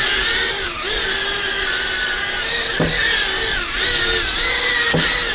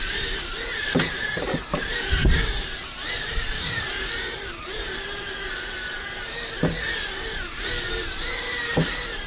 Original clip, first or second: first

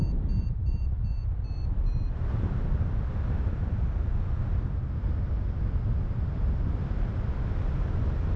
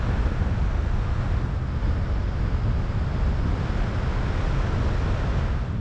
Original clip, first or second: second